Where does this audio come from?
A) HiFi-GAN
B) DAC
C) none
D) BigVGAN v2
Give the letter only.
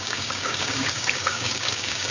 B